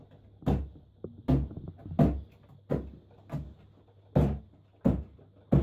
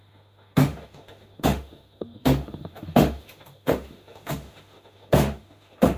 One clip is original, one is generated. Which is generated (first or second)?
second